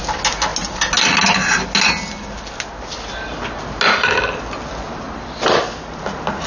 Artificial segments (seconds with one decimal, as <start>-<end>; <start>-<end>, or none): none